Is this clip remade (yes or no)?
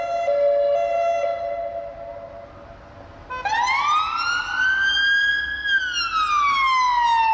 no